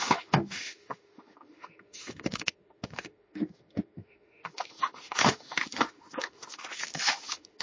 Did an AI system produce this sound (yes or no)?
yes